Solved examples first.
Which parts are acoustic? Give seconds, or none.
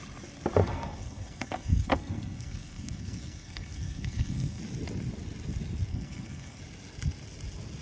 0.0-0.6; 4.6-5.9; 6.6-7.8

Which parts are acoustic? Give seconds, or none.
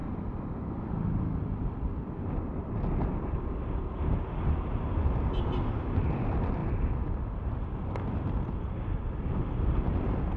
0.0-10.4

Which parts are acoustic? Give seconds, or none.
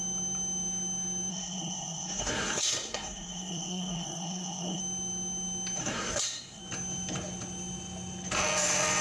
0.0-1.3; 4.8-5.8; 6.6-9.0